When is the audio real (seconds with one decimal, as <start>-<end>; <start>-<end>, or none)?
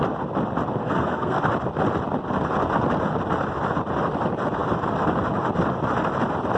0.0-0.8; 1.4-6.6